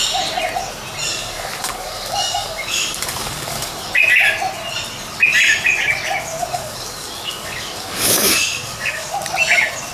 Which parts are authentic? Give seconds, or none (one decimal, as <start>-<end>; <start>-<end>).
0.0-1.1; 3.9-6.3; 9.1-9.9